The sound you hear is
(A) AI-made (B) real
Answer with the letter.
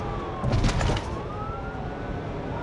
B